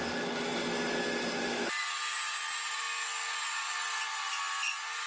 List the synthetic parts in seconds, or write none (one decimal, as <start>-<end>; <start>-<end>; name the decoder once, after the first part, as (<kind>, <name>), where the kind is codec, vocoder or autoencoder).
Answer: none